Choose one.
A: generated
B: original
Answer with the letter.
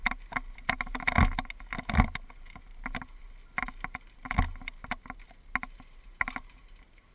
B